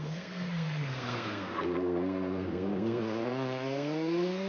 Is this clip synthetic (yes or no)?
yes